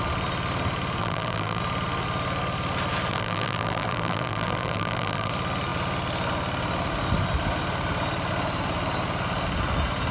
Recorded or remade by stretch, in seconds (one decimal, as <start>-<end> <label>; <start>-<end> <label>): 0.0-1.0 recorded; 1.0-1.6 remade; 1.6-3.1 recorded; 3.1-5.3 remade; 5.3-10.1 recorded